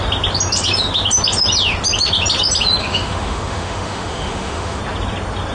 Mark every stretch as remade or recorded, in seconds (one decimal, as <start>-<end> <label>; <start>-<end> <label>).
0.0-2.8 recorded; 2.8-4.8 remade; 4.8-5.5 recorded